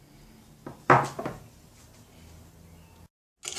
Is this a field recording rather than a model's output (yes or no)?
yes